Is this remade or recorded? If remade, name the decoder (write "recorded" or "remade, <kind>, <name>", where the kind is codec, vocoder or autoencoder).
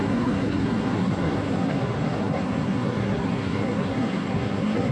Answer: remade, codec, SNAC